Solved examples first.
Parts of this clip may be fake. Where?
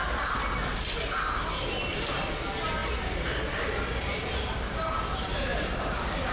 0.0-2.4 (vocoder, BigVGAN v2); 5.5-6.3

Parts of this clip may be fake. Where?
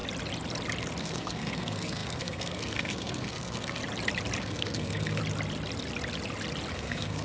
1.0-3.8 (codec, SNAC); 4.4-5.2; 6.7-7.2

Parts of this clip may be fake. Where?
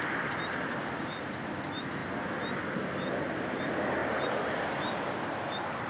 0.0-2.0 (vocoder, BigVGAN v2); 3.2-5.9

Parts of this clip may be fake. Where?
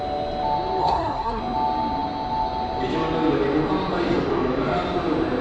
0.8-1.4 (codec, SNAC)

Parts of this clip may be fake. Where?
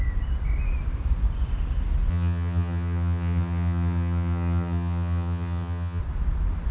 2.1-6.0 (vocoder, HiFi-GAN)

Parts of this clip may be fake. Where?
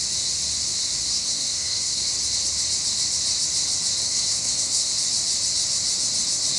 1.1-2.0 (codec, SNAC); 4.0-4.9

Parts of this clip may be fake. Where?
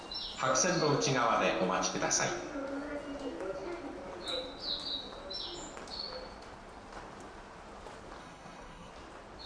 8.2-8.9 (codec, SNAC)